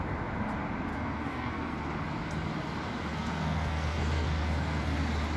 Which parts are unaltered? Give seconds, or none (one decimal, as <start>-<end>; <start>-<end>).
0.0-0.9; 1.8-3.1; 4.9-5.4